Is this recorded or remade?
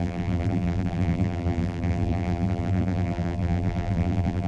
remade